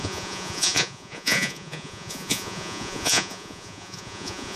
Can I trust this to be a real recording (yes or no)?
no